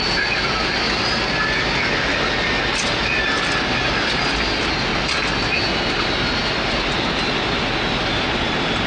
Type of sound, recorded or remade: recorded